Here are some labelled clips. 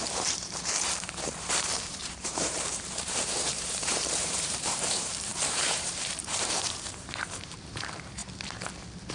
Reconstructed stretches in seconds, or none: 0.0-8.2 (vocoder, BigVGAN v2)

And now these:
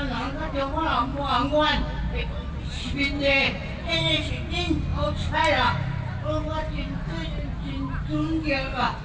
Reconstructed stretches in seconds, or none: none

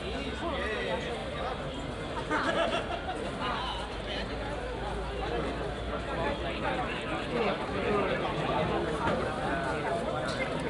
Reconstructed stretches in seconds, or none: none

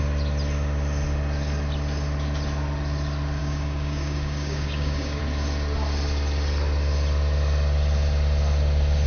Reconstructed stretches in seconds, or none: 3.4-5.2 (codec, DAC)

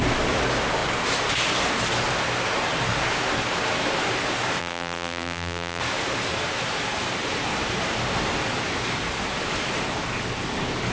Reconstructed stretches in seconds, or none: 4.6-5.8 (vocoder, BigVGAN v2)